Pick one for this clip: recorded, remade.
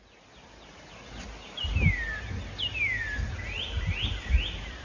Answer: recorded